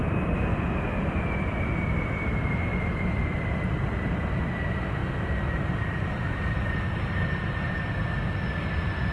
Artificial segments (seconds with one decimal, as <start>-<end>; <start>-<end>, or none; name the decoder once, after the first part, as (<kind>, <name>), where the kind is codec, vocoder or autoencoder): 2.7-4.6 (vocoder, BigVGAN v2)